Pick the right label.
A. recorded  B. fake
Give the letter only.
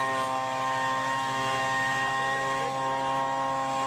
A